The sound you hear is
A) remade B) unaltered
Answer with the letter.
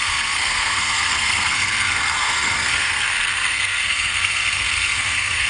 A